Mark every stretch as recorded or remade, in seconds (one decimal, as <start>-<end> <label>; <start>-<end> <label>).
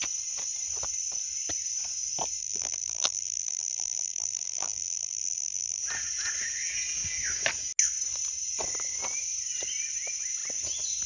0.0-2.4 recorded; 2.4-5.8 remade; 5.8-11.1 recorded